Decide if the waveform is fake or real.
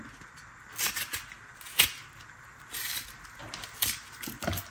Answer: real